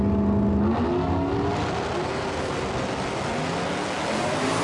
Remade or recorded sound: recorded